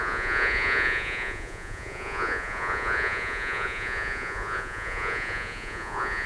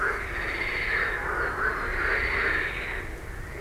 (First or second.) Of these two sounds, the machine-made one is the first